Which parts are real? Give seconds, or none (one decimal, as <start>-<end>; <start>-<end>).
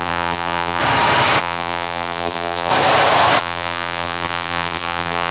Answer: 0.8-1.4; 2.7-3.4